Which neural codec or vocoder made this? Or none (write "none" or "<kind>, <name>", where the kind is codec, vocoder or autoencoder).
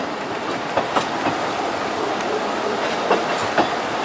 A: none